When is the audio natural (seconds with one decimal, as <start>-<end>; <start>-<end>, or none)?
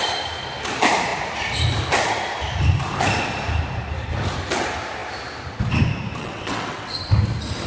0.0-6.2; 7.1-7.7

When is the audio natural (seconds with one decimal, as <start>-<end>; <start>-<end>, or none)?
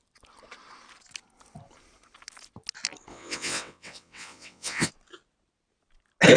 0.0-3.1; 4.9-6.4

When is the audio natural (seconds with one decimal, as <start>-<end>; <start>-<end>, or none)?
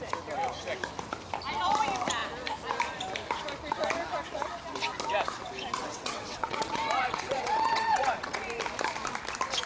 0.0-5.8; 8.4-9.7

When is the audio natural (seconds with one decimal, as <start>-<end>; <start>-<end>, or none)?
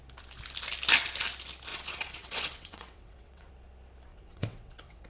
0.0-1.7; 3.5-4.1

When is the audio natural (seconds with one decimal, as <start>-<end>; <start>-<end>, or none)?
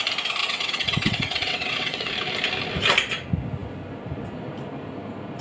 0.0-0.4; 2.1-5.4